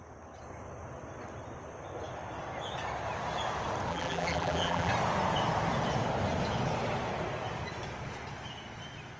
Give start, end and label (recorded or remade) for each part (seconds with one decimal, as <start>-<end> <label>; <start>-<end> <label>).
0.0-3.9 recorded; 3.9-4.9 remade; 4.9-9.2 recorded